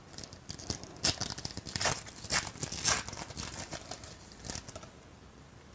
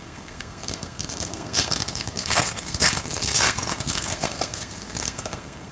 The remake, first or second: second